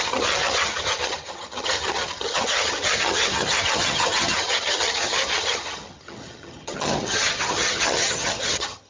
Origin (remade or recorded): remade